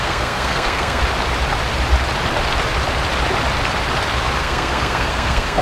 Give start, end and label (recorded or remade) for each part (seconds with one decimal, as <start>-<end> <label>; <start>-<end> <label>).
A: 0.0-1.0 remade; 1.0-4.4 recorded; 4.4-5.6 remade